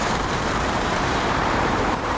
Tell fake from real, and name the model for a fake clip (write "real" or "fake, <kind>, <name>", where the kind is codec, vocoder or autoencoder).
fake, vocoder, BigVGAN v2